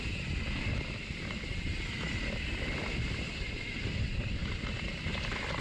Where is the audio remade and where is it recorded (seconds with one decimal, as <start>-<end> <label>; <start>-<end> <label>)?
0.0-5.6 recorded